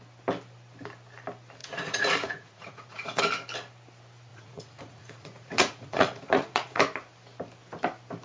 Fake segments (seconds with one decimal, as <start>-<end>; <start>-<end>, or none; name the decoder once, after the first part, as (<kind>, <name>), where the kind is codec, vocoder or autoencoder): 1.6-3.2 (vocoder, Vocos); 4.3-6.8